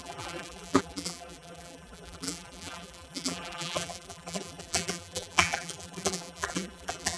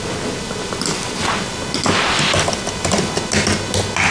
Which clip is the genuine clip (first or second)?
second